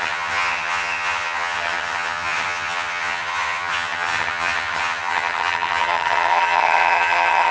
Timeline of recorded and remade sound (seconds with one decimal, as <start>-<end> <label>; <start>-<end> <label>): 0.0-7.5 remade